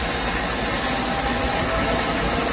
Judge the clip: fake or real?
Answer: real